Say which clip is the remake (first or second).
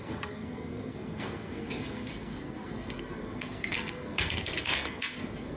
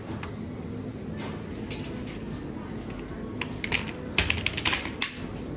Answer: first